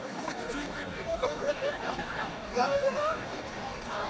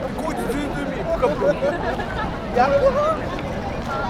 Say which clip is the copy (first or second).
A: first